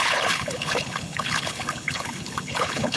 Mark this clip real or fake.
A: fake